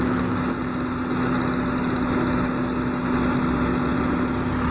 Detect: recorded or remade recorded